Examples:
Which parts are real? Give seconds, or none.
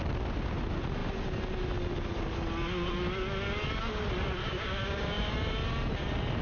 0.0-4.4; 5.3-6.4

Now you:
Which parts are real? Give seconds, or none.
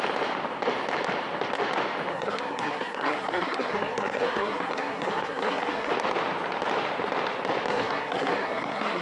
0.0-2.1; 5.9-7.7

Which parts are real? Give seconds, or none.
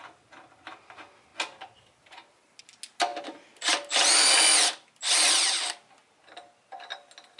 0.0-7.4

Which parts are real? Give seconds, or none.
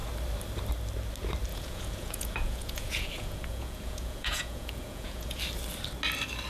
0.0-1.5; 5.4-6.5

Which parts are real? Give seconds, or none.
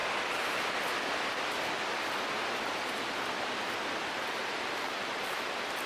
0.0-4.4; 5.4-5.9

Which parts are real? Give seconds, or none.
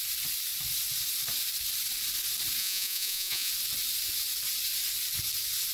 0.0-2.6; 3.5-5.7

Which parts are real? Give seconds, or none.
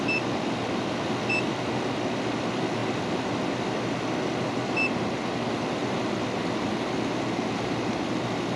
0.0-8.6